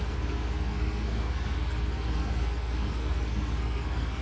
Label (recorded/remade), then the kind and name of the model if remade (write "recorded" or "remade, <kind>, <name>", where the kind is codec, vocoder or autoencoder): remade, codec, SNAC